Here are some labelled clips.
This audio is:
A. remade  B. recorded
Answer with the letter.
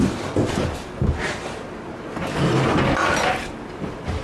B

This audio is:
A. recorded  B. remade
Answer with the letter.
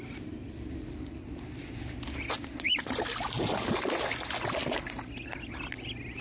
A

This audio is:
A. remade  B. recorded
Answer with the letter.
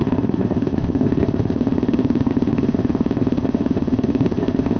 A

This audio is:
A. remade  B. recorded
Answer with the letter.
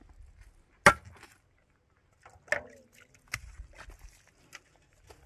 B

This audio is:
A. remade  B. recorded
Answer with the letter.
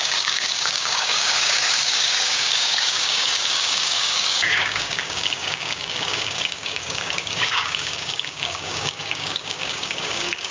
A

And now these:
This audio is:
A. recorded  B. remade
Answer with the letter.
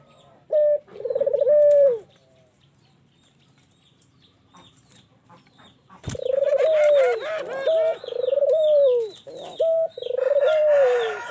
B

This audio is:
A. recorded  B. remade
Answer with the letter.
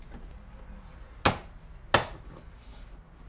A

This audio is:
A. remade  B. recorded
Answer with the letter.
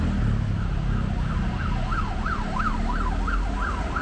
B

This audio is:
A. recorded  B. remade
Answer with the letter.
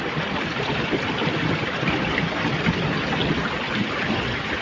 A